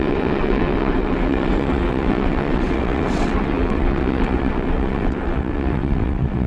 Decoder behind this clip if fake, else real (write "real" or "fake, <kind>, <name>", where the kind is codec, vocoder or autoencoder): fake, vocoder, WaveNeXt